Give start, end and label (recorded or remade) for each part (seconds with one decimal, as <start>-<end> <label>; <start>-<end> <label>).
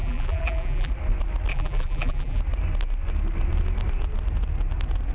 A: 0.0-0.9 remade; 0.9-1.5 recorded; 1.5-2.4 remade; 2.4-5.1 recorded